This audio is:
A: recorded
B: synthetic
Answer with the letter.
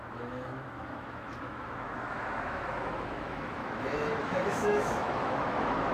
B